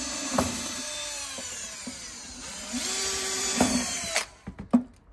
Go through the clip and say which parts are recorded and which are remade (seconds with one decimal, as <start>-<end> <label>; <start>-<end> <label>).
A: 0.0-4.2 remade; 4.2-5.1 recorded

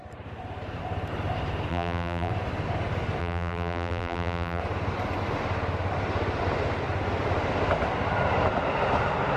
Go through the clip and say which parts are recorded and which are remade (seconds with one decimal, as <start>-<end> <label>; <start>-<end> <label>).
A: 0.0-1.7 recorded; 1.7-2.3 remade; 2.3-3.2 recorded; 3.2-4.6 remade; 4.6-9.4 recorded

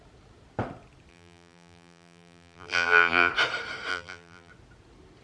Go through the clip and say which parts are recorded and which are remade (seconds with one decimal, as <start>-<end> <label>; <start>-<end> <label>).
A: 0.0-1.1 recorded; 1.1-3.3 remade; 3.3-3.9 recorded; 3.9-4.5 remade; 4.5-5.2 recorded

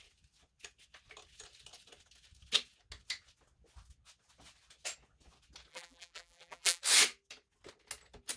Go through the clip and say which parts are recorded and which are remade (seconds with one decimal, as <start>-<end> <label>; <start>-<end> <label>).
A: 0.0-5.7 recorded; 5.7-6.8 remade; 6.8-8.4 recorded

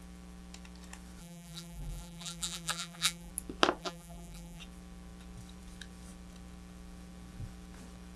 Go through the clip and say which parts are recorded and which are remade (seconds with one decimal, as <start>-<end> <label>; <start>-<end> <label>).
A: 0.0-1.2 recorded; 1.2-3.3 remade; 3.3-3.8 recorded; 3.8-4.6 remade; 4.6-8.2 recorded

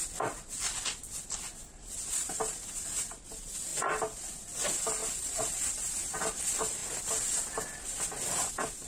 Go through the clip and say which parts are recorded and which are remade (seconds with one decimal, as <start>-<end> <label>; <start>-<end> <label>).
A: 0.0-8.9 recorded

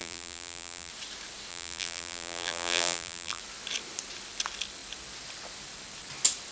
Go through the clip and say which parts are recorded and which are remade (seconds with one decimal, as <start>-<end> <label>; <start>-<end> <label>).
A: 0.0-0.9 remade; 0.9-1.5 recorded; 1.5-3.4 remade; 3.4-6.5 recorded